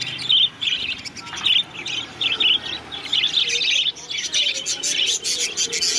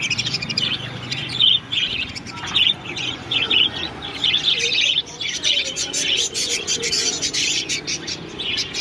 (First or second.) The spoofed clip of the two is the second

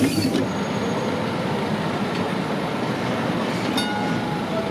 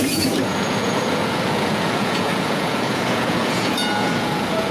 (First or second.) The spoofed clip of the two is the second